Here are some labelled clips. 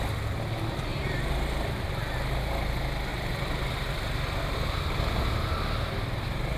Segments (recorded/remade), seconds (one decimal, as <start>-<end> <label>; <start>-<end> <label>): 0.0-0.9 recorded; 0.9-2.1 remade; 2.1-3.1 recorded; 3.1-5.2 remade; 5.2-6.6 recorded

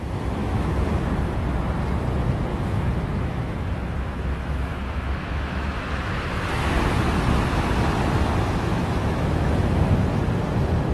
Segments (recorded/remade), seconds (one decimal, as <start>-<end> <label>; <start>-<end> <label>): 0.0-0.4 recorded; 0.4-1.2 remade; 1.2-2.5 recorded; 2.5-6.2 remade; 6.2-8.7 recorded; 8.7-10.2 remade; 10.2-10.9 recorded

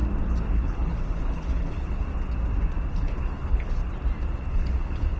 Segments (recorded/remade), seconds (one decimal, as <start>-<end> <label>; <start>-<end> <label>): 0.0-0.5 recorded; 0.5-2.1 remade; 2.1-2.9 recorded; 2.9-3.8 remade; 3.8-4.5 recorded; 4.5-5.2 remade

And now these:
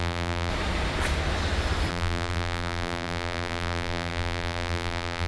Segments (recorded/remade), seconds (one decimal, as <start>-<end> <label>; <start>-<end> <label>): 0.0-0.5 remade; 0.5-1.9 recorded; 1.9-5.3 remade

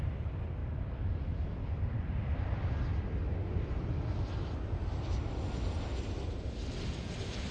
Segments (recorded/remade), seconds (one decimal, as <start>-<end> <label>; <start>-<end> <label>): 0.0-7.5 recorded